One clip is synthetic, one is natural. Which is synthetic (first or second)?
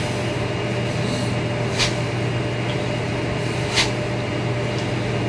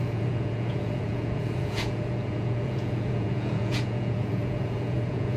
second